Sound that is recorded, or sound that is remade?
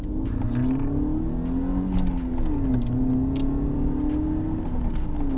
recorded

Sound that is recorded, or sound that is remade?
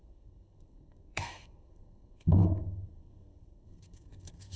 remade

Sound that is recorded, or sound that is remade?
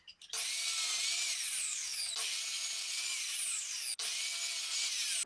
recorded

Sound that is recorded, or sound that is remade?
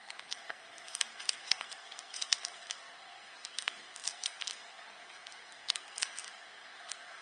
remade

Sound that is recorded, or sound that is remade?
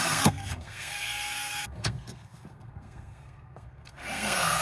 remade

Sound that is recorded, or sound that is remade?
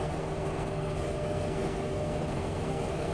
remade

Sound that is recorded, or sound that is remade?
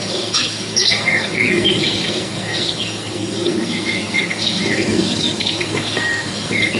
remade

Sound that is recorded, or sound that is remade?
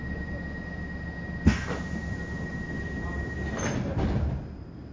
recorded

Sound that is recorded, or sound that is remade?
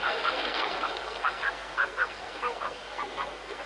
remade